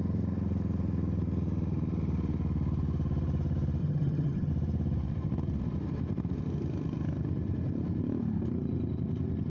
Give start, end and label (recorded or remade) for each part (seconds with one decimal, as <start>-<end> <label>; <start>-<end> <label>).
0.0-3.8 recorded; 3.8-4.5 remade; 4.5-9.5 recorded